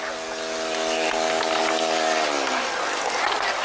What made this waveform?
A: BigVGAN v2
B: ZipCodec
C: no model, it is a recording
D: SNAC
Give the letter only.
C